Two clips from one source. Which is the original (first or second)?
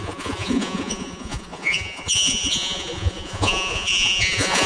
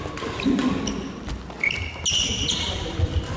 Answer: second